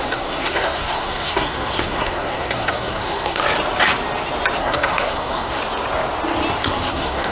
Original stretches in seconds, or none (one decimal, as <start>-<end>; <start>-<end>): 3.4-4.6; 5.6-6.6